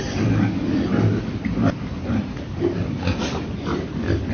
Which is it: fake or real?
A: fake